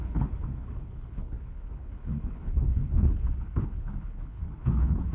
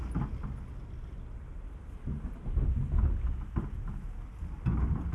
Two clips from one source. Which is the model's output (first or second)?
first